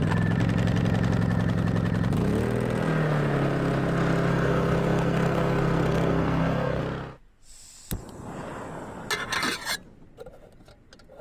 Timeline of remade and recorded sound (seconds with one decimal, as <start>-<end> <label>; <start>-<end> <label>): 0.0-4.3 recorded; 4.3-6.8 remade; 6.8-11.2 recorded